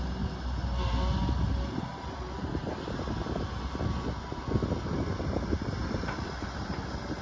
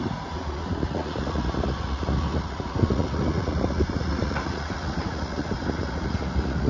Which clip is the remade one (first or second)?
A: second